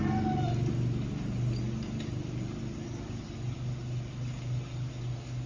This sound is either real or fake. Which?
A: real